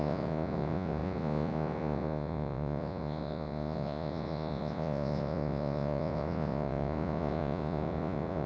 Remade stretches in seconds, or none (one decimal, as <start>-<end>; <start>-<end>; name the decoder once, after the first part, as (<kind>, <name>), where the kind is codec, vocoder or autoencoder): 0.0-8.5 (vocoder, Vocos)